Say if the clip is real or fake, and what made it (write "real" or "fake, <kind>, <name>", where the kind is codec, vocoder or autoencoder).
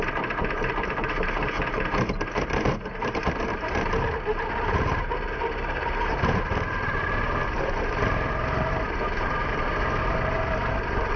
fake, vocoder, BigVGAN v2